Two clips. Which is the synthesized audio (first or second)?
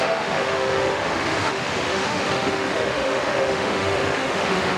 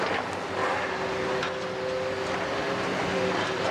first